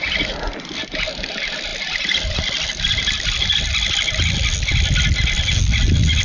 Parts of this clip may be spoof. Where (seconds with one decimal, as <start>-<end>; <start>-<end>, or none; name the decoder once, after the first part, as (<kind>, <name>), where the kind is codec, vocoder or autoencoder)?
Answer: none